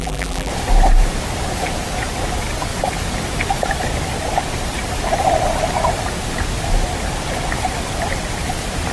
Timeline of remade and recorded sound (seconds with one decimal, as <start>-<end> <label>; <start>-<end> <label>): 0.0-0.5 remade; 0.5-8.9 recorded